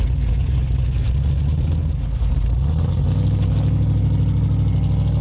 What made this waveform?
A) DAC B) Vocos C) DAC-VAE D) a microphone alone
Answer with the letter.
D